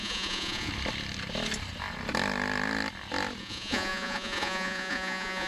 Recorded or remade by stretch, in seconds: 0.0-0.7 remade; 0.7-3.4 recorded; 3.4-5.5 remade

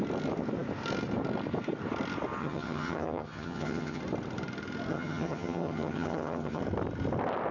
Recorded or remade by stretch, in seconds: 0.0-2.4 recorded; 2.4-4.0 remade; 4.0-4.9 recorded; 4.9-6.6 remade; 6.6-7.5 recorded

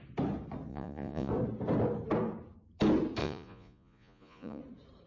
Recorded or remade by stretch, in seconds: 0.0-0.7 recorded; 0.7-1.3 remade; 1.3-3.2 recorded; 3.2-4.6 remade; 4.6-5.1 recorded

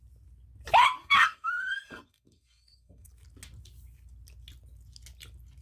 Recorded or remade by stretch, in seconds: 0.0-1.0 recorded; 1.0-3.1 remade; 3.1-5.6 recorded